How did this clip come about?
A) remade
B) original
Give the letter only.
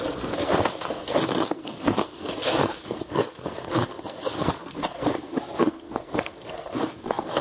A